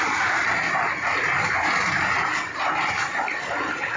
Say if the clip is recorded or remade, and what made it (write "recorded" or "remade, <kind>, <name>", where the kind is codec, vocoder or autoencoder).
recorded